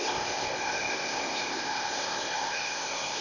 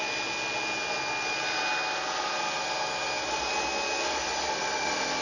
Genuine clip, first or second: second